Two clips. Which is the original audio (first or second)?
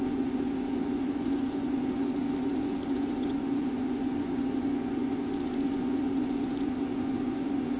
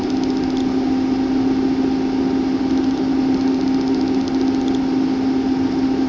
second